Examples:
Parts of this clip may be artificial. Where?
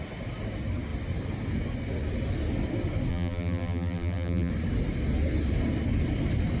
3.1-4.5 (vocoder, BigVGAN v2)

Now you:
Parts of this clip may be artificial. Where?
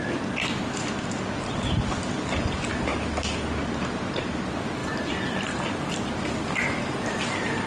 0.0-7.7 (vocoder, BigVGAN v2)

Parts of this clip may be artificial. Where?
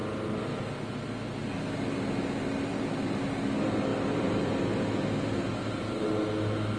2.7-3.2 (vocoder, BigVGAN v2); 3.9-4.5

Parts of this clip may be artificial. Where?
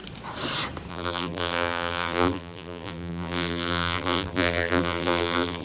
0.9-5.6 (vocoder, BigVGAN v2)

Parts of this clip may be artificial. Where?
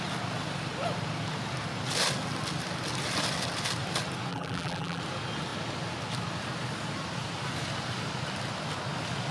4.3-5.0 (vocoder, BigVGAN v2)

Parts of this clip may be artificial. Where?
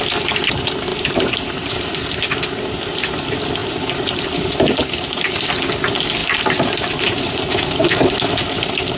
0.9-1.9 (vocoder, BigVGAN v2); 3.6-5.5; 6.2-7.4